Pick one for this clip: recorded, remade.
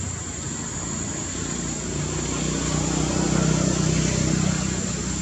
recorded